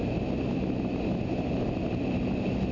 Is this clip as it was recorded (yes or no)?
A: yes